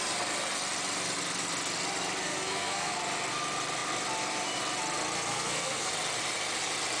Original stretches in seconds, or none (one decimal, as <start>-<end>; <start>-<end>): 0.0-2.3; 2.9-5.3; 5.9-7.0